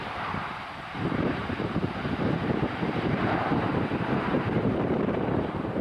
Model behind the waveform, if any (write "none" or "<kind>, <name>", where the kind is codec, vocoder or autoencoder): vocoder, BigVGAN v2